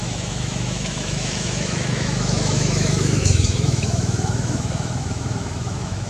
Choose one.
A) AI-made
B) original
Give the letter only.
A